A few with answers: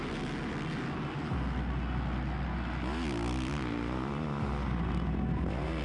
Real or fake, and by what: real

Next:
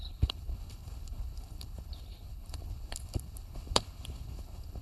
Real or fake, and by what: fake, codec, HILCodec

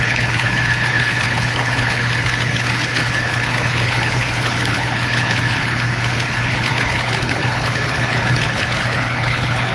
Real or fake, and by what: fake, codec, HILCodec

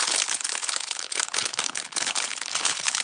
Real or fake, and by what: fake, codec, HILCodec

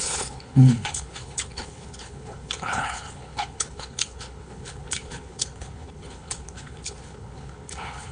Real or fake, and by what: fake, codec, HILCodec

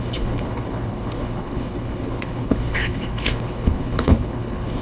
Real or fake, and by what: fake, codec, HILCodec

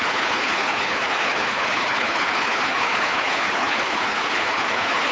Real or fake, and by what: fake, codec, HILCodec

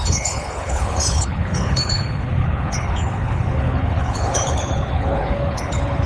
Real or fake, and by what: fake, codec, HILCodec